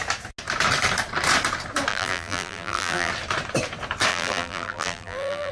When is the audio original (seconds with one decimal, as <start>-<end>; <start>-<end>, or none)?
0.0-1.9; 3.1-4.1